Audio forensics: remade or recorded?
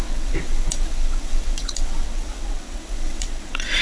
remade